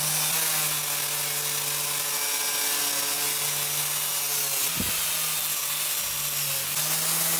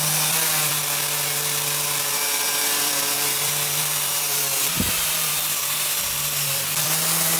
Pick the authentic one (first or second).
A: first